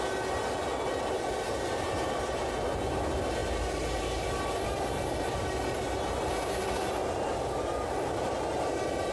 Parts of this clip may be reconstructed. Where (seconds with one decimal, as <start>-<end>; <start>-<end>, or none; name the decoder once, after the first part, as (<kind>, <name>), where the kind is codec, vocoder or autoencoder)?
3.4-5.0 (vocoder, BigVGAN v2)